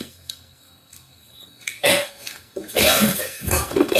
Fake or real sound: fake